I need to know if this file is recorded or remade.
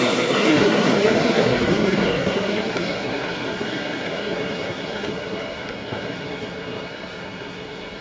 remade